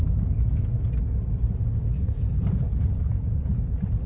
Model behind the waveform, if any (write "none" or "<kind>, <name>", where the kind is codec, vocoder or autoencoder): none